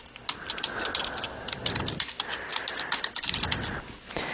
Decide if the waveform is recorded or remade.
recorded